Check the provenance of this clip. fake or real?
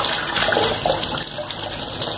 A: real